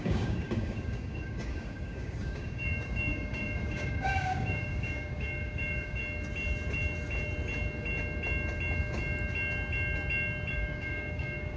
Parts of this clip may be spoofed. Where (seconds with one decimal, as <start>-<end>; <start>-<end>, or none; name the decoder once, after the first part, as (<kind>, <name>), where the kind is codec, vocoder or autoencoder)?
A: 0.0-6.0 (codec, DAC); 10.5-11.6